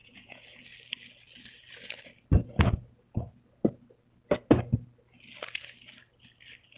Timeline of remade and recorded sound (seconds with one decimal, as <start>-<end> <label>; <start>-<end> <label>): 0.0-0.6 remade; 0.6-2.4 recorded; 2.4-3.3 remade; 3.3-6.8 recorded